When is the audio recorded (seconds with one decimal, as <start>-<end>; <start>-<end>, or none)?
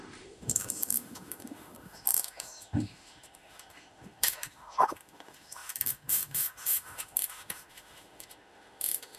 none